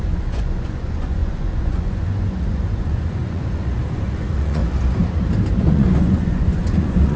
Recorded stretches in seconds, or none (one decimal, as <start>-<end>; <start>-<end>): 4.6-5.6